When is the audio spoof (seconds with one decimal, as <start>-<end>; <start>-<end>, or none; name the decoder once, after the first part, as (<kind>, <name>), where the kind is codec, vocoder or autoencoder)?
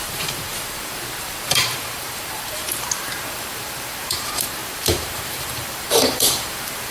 0.0-6.9 (vocoder, BigVGAN v2)